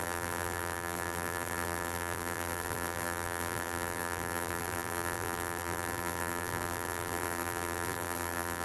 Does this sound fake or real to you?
fake